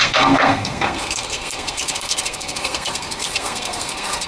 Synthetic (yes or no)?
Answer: yes